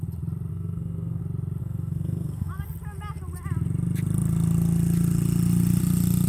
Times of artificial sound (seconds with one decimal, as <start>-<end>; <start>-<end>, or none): 0.5-1.2; 1.6-2.5

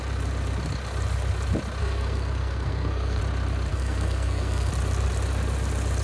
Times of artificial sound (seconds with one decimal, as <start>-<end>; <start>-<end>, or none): 1.8-3.2; 3.7-4.7

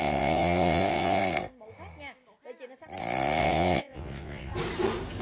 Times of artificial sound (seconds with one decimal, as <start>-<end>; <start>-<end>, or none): 0.0-1.2; 3.4-4.5

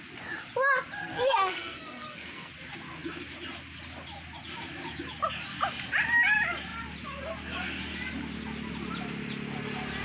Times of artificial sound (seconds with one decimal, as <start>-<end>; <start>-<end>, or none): 1.0-2.5

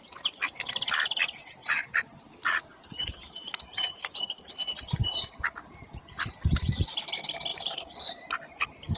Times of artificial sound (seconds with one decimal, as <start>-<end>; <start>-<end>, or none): 1.6-2.2; 2.8-4.5; 7.5-8.3

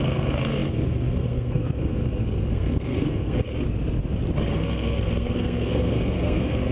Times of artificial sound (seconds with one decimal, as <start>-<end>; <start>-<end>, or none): 0.0-3.5; 4.5-6.7

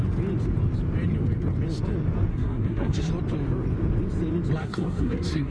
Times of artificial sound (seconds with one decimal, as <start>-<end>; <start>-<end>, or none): 2.3-3.1; 4.6-5.5